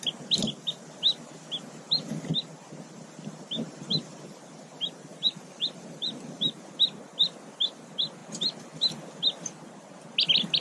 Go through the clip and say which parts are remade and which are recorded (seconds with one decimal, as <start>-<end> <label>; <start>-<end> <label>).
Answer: 0.0-5.1 recorded; 5.1-6.7 remade; 6.7-10.6 recorded